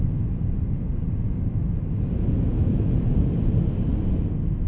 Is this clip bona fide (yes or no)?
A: yes